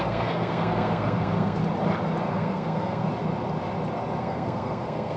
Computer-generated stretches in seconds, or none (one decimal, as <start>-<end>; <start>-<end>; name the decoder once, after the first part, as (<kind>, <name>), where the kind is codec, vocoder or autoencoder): 0.0-1.6 (codec, SNAC); 2.3-3.1; 4.2-5.2